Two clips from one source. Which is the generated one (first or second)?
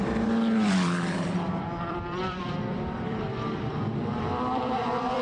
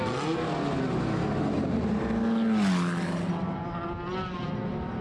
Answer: first